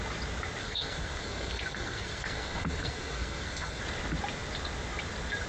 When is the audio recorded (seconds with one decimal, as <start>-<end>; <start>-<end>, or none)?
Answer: 0.0-0.6; 3.8-5.5